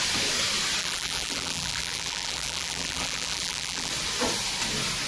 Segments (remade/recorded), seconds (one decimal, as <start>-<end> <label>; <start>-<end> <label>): 0.0-0.8 recorded; 0.8-3.9 remade; 3.9-5.1 recorded